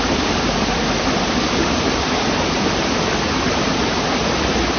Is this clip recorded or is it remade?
recorded